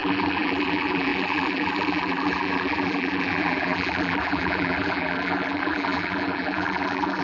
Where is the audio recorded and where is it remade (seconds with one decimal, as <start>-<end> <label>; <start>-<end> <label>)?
0.0-7.2 remade

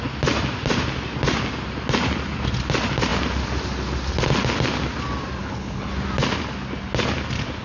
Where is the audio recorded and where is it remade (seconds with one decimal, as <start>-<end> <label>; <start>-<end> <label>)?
0.0-5.4 recorded; 5.4-5.9 remade; 5.9-7.6 recorded